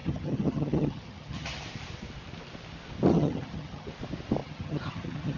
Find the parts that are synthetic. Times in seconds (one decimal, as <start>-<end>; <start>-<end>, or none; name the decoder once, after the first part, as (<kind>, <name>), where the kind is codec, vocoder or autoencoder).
0.0-1.6 (vocoder, HiFi-GAN); 3.1-3.9; 4.4-5.4